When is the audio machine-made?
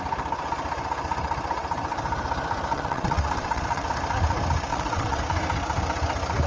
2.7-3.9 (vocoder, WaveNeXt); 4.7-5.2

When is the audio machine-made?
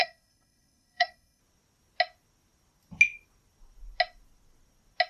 0.0-1.4 (codec, SNAC)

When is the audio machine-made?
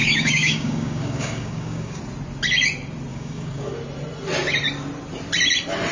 0.0-2.0 (codec, DAC); 3.1-3.7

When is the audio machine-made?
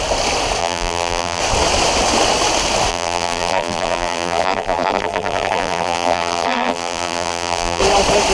0.6-1.4 (vocoder, BigVGAN v2); 2.9-7.8